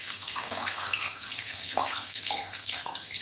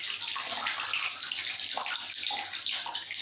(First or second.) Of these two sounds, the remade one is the first